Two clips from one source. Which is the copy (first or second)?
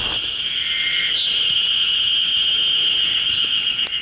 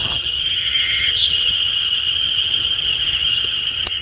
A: second